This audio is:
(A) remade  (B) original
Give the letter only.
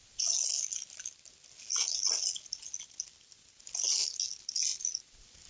B